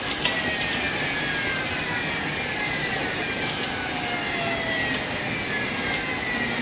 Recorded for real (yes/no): yes